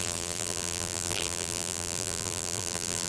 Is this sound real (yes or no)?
no